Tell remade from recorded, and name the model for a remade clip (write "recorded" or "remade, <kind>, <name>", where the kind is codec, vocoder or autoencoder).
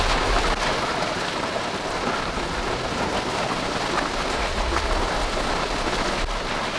recorded